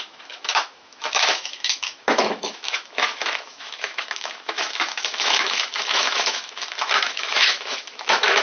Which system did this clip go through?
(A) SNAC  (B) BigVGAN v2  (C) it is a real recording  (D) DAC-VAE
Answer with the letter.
D